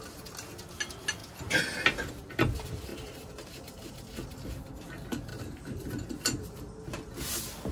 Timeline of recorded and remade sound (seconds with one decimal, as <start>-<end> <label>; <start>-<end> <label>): 0.0-2.9 recorded; 2.9-3.9 remade; 3.9-7.7 recorded